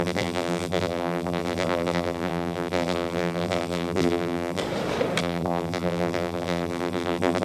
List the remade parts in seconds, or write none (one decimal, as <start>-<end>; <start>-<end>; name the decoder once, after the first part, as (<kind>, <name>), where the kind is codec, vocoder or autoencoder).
0.0-4.6 (vocoder, BigVGAN v2); 5.2-7.4